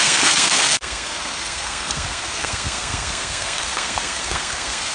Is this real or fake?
fake